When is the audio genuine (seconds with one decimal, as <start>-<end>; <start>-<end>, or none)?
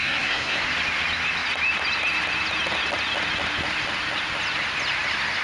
0.6-5.4